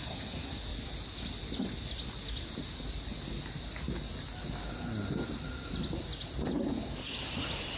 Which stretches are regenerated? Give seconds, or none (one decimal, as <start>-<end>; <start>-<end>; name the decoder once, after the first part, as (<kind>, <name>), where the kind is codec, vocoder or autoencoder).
none